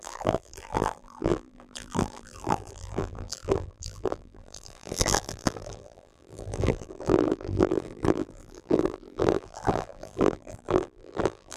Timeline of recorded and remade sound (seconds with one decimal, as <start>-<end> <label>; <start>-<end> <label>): 0.0-11.6 remade